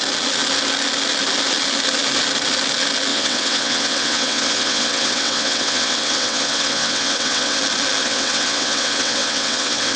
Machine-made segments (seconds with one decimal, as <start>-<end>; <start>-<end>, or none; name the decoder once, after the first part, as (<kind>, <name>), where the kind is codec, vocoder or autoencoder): 3.1-7.6 (vocoder, WaveNeXt); 8.0-10.0